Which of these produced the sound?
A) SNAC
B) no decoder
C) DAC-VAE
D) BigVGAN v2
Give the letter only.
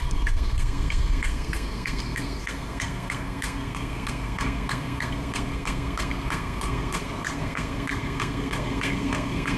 A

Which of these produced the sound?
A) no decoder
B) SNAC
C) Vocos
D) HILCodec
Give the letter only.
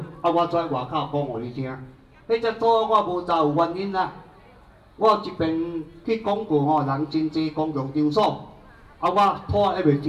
A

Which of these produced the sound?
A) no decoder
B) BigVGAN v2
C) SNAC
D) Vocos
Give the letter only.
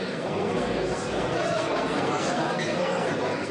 C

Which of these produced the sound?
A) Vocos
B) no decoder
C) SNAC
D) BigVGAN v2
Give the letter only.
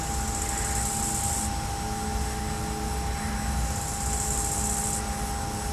B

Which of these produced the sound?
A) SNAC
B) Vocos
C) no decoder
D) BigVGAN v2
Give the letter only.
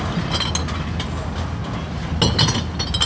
C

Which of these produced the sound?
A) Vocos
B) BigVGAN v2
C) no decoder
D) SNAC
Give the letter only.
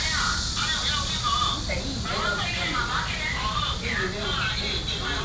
C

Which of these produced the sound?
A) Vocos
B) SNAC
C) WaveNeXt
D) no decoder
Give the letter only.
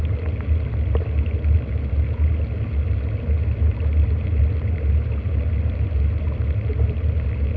D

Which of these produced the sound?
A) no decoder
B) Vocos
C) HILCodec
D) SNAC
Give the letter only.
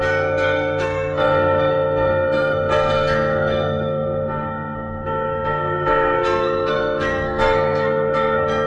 D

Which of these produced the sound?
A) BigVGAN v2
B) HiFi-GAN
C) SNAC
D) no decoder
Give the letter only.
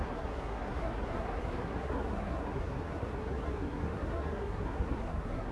C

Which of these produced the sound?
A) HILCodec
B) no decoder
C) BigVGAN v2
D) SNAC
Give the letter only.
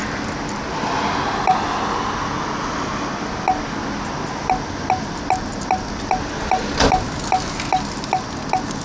B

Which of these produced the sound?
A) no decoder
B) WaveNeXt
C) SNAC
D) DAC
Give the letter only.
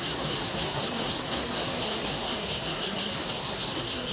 C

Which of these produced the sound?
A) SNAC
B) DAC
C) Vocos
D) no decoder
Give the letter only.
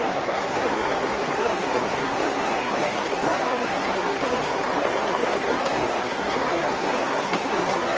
A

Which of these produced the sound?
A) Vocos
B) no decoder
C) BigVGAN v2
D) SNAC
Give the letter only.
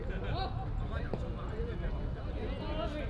B